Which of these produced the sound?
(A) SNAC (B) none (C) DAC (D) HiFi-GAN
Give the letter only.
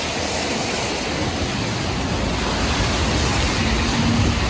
B